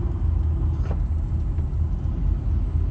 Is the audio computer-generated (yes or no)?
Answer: no